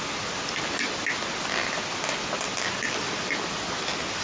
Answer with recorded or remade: recorded